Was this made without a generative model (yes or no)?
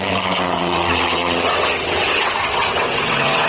no